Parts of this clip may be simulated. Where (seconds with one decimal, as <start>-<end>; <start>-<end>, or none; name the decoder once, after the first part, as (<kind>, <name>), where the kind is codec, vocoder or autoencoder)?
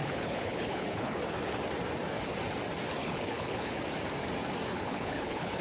0.0-1.2 (codec, HILCodec); 3.0-3.8; 4.7-5.6